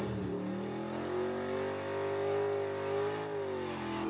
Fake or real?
real